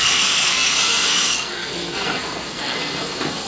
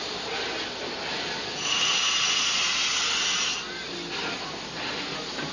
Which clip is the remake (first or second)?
first